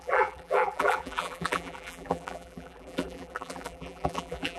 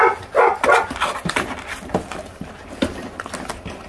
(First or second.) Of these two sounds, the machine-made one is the first